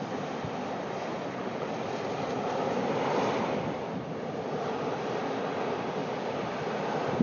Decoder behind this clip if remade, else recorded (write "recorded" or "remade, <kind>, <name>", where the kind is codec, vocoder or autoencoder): recorded